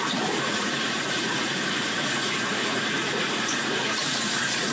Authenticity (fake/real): fake